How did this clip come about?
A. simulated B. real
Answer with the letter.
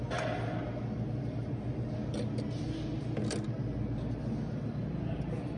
B